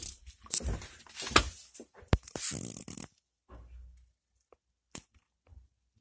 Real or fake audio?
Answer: real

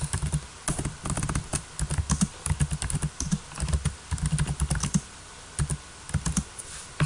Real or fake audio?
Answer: real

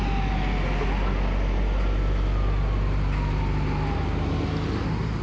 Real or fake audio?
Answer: real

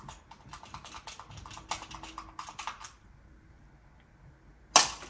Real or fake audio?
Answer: real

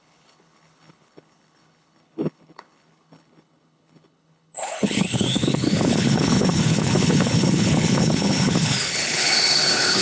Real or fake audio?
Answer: fake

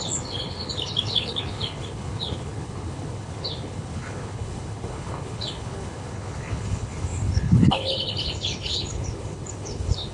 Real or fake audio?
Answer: fake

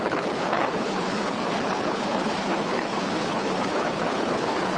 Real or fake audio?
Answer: fake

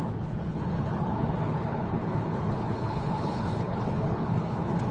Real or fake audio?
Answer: fake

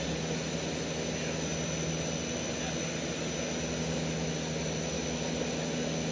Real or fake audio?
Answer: real